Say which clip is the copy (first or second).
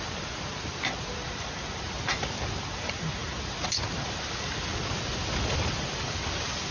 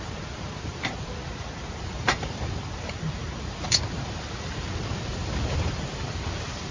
second